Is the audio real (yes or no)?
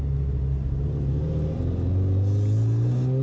yes